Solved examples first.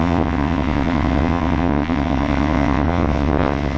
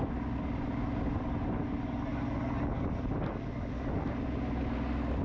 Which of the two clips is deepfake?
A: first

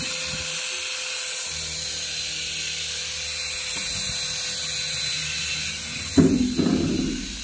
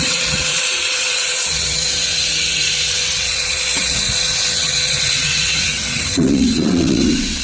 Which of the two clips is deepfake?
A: second